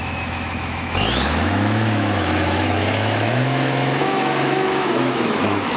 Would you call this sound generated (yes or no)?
yes